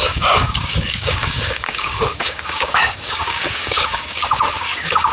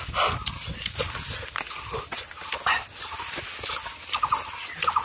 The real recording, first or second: second